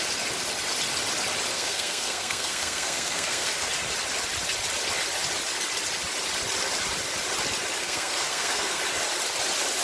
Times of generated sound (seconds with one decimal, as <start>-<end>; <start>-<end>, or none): 1.5-3.7; 7.8-8.8